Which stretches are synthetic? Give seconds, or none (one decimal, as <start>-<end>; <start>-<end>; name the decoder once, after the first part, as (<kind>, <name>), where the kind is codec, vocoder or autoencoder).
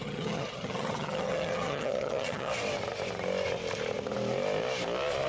0.0-2.5 (vocoder, HiFi-GAN)